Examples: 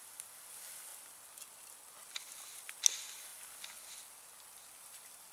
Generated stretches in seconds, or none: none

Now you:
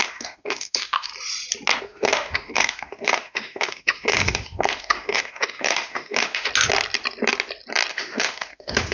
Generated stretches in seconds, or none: 0.0-1.1 (autoencoder, DAC-VAE); 1.8-6.5; 7.9-8.9

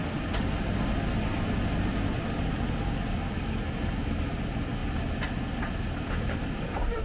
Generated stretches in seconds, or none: none

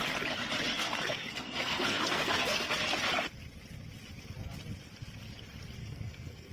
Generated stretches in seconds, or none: 0.7-2.7 (codec, SNAC); 5.8-6.5

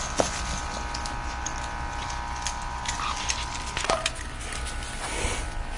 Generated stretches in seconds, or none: none